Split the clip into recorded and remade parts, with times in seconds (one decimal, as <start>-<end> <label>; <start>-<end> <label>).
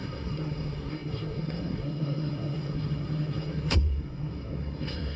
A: 0.0-5.2 remade